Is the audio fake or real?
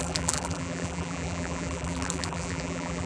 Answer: fake